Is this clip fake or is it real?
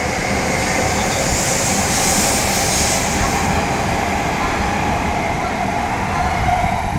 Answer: real